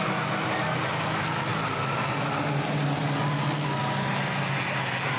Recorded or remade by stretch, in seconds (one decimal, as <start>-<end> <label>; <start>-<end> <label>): 0.0-5.2 recorded